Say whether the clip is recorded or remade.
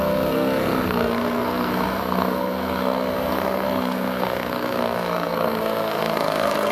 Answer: remade